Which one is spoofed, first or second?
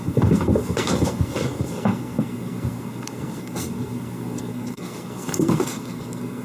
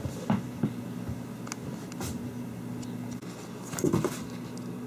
first